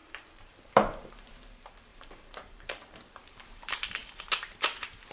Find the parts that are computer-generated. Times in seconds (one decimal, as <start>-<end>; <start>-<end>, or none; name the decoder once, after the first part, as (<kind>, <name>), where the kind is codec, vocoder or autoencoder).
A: 0.0-1.1 (vocoder, BigVGAN v2); 1.9-4.2